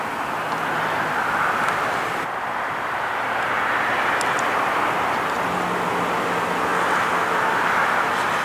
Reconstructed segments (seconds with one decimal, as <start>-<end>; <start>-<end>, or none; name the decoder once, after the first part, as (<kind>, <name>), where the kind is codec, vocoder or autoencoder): none